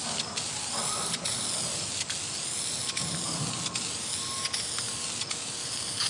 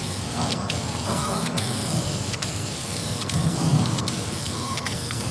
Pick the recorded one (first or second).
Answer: first